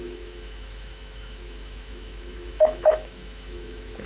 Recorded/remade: remade